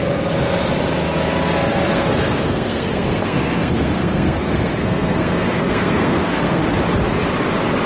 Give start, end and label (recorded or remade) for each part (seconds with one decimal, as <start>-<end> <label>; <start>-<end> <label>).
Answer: 0.0-1.9 recorded; 1.9-6.6 remade; 6.6-7.9 recorded